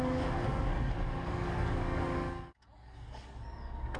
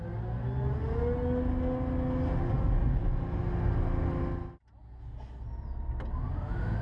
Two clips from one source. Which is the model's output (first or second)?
first